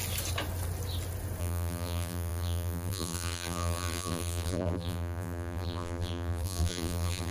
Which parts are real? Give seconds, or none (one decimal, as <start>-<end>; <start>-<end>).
0.0-1.4